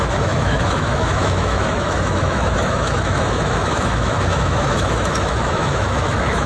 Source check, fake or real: fake